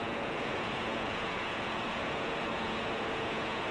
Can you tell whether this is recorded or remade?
remade